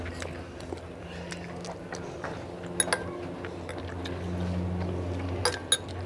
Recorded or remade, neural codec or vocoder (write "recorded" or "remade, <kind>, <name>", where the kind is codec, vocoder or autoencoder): recorded